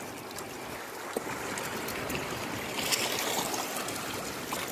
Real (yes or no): yes